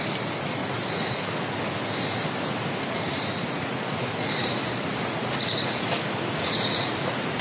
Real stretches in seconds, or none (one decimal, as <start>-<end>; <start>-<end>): 0.0-0.6; 1.2-3.1; 5.9-6.4